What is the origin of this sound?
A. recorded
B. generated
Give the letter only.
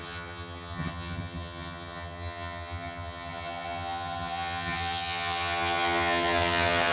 B